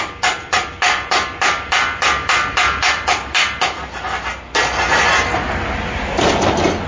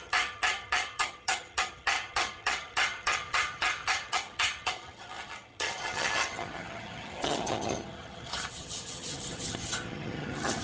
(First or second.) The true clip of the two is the first